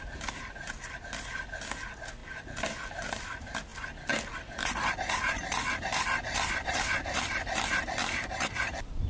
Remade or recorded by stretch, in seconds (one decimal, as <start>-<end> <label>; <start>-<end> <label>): 0.0-9.1 recorded